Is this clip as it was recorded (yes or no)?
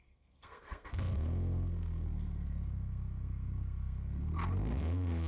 no